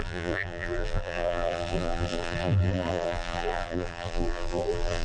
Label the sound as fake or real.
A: fake